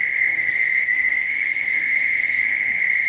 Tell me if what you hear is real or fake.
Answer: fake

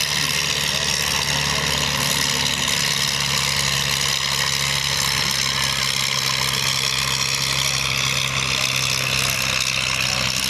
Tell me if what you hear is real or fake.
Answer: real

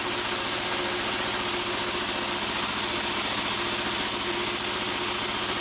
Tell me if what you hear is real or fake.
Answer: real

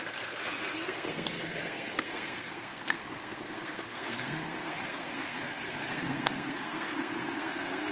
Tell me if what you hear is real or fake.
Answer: fake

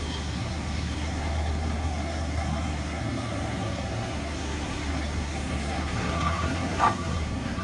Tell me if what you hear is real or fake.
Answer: fake